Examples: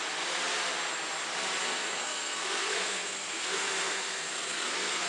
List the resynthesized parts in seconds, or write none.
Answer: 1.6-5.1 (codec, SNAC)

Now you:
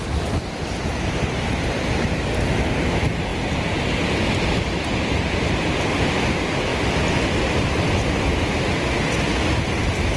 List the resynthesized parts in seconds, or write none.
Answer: none